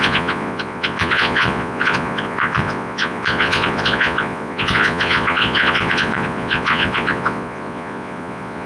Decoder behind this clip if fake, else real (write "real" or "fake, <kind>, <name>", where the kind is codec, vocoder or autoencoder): fake, vocoder, Vocos